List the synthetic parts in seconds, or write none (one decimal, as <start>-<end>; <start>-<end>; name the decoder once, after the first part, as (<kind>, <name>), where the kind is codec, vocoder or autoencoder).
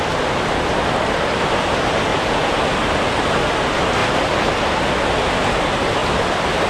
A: 2.1-2.6 (vocoder, Vocos)